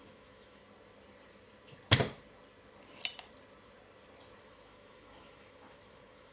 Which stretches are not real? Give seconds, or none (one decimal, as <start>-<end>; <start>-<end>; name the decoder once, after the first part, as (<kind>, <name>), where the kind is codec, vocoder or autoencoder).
0.0-0.6 (autoencoder, DAC-VAE); 4.4-6.3